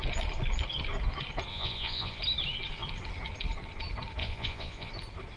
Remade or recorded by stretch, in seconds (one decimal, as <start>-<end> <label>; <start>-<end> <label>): 0.0-1.5 recorded; 1.5-2.2 remade; 2.2-4.2 recorded; 4.2-4.9 remade; 4.9-5.4 recorded